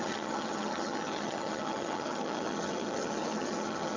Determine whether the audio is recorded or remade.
remade